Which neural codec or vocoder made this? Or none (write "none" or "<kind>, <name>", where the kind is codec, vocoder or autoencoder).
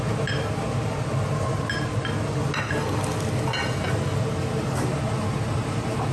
none